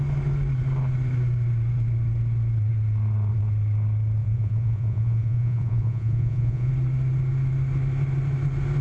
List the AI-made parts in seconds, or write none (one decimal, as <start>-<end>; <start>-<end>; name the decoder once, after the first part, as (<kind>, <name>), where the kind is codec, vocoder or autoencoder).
4.2-6.7 (vocoder, Vocos)